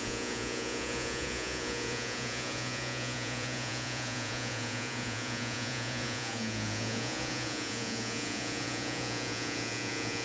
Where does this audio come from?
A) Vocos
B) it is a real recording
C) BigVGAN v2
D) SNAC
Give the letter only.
A